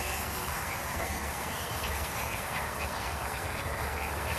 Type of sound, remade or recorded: remade